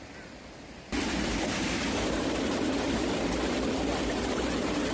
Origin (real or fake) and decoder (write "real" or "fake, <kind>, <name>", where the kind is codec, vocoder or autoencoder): real